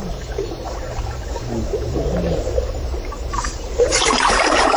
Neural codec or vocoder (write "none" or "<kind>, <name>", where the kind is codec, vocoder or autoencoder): vocoder, BigVGAN v2